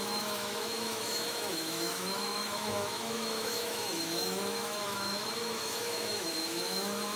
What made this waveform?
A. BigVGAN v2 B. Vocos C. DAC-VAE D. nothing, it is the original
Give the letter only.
C